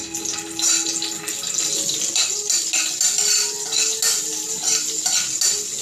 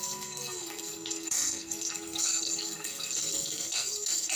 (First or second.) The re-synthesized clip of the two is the second